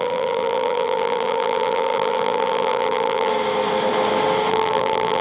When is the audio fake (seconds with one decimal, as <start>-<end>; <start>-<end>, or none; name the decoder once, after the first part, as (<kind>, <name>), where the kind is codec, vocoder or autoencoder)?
0.0-3.3 (vocoder, BigVGAN v2); 4.5-5.2